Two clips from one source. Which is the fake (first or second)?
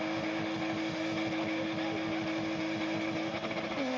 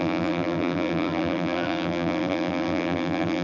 second